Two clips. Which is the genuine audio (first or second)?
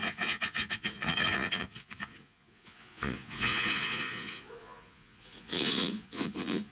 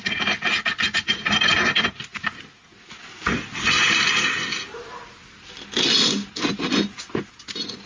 second